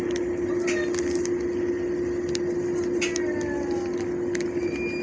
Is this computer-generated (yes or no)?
no